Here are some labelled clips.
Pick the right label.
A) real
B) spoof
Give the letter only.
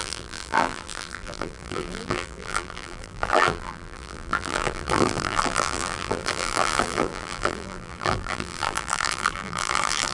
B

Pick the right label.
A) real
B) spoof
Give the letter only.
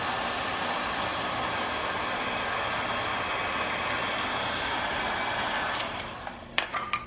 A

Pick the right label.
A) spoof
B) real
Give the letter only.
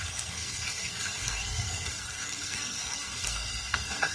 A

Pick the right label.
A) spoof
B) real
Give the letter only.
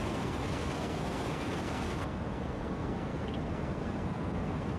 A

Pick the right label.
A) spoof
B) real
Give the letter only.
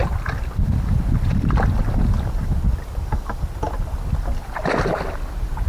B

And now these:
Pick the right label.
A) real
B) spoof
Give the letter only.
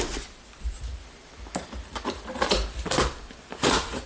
A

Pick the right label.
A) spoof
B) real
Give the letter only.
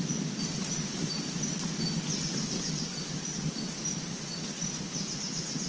B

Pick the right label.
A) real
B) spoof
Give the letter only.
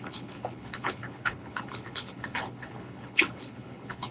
B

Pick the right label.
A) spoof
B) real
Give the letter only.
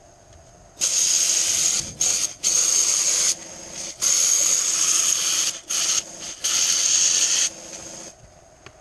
B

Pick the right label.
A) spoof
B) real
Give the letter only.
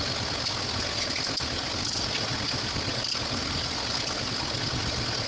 B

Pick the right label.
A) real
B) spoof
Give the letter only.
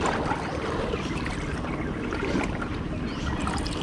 A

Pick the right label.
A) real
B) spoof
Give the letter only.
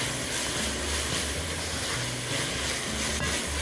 A